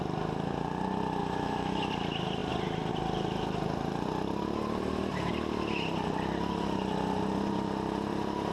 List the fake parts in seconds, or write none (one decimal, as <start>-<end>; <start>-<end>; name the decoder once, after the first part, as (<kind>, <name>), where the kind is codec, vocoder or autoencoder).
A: 1.2-1.9 (autoencoder, DAC-VAE)

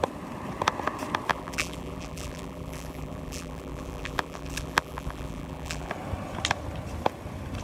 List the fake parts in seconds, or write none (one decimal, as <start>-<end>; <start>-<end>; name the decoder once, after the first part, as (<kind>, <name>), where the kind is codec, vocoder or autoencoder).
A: 1.3-5.9 (vocoder, BigVGAN v2)

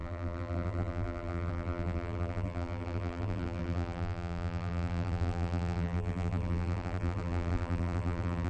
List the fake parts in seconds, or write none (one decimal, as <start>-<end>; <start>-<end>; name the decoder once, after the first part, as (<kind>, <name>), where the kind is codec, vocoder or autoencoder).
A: 0.0-8.5 (vocoder, BigVGAN v2)

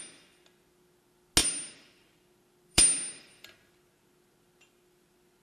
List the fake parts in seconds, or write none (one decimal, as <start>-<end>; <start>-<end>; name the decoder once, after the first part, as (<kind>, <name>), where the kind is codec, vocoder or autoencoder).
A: 1.4-2.0 (vocoder, BigVGAN v2); 2.7-3.7